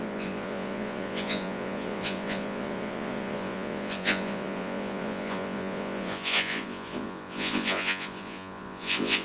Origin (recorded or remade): remade